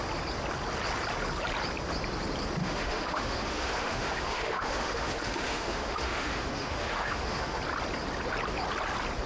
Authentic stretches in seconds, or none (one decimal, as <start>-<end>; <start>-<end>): 0.0-2.6; 7.6-9.3